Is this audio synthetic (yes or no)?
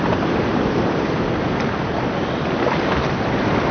no